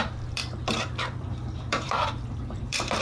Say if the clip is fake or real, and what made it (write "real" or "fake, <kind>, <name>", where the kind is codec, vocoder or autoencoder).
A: fake, vocoder, BigVGAN v2